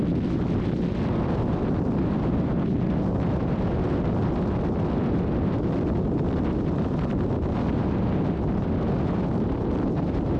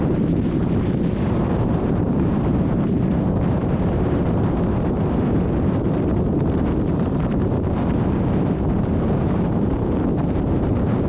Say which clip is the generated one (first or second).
second